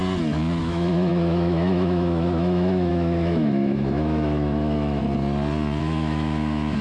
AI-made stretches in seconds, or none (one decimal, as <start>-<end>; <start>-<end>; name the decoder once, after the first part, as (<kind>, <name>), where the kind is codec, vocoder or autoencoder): 0.6-5.0 (autoencoder, DAC-VAE); 5.8-6.8